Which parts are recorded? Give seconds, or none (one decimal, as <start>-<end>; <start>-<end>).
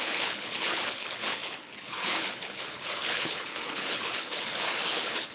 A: none